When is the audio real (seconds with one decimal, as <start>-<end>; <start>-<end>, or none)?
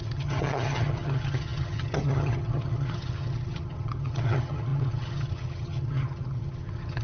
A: none